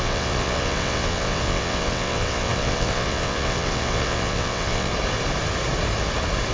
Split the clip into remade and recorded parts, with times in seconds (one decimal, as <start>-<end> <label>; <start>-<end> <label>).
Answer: 0.0-4.9 remade; 4.9-6.5 recorded